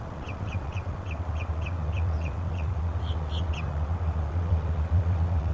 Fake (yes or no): yes